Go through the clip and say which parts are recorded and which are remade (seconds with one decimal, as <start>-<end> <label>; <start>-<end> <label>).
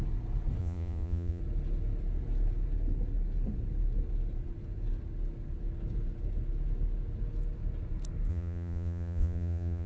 0.0-0.6 recorded; 0.6-1.4 remade; 1.4-8.3 recorded; 8.3-9.9 remade